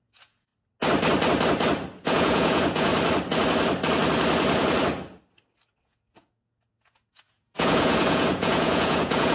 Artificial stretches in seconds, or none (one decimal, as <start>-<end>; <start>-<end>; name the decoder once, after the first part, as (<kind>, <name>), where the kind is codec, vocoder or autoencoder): 0.0-0.5 (vocoder, Vocos); 2.0-2.9; 5.8-9.3